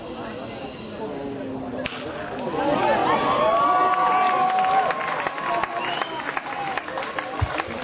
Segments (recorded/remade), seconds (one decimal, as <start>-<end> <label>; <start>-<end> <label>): 0.0-7.8 recorded